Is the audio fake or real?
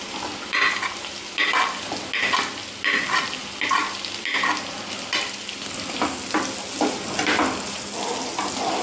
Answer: real